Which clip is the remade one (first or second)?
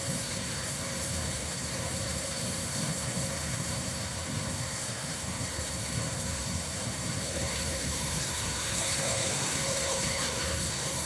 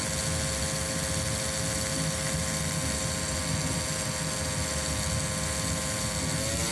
first